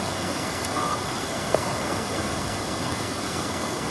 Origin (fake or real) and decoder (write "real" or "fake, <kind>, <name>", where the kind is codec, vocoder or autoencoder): fake, codec, SNAC